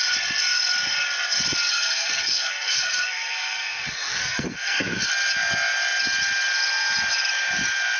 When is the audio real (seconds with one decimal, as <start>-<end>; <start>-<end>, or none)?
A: 0.0-1.7; 5.1-8.0